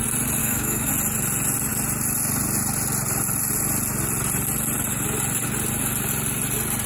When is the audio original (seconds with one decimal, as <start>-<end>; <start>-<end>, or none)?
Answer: 0.0-0.4; 0.9-6.9